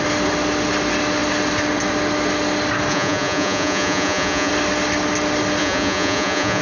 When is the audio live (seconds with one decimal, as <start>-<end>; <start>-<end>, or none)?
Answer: 0.0-2.9; 4.5-5.6